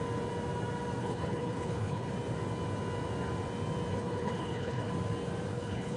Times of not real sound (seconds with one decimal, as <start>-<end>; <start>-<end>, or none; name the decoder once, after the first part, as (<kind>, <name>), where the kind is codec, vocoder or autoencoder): 1.0-2.1 (codec, HILCodec); 3.9-4.9; 5.5-6.0